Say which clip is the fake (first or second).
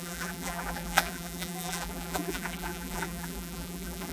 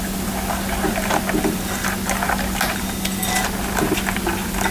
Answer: first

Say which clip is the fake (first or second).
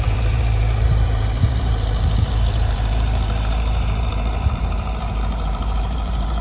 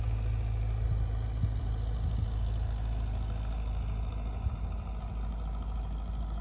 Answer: first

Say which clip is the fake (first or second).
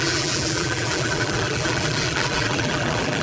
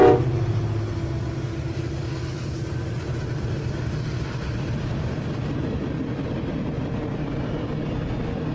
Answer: first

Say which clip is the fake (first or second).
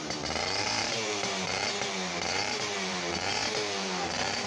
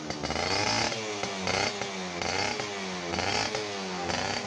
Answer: first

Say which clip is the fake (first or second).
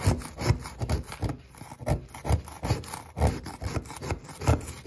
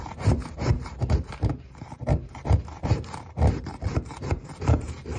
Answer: second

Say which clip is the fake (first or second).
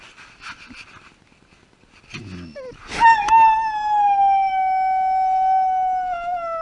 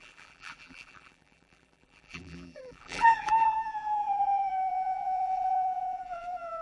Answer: second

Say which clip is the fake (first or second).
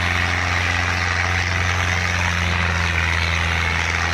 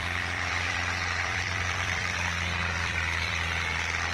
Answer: second